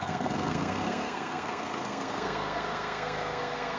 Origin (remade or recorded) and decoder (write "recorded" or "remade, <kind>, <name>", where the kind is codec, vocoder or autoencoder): remade, codec, SNAC